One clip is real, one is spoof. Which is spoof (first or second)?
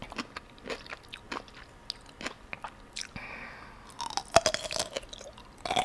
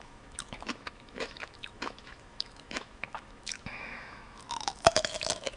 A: second